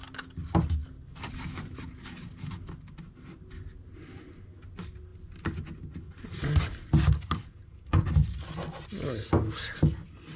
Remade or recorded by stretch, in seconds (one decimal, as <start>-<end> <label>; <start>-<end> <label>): 0.0-10.4 recorded